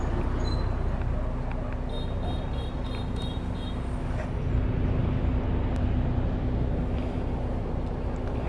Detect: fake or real real